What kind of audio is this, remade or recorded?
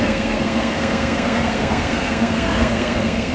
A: remade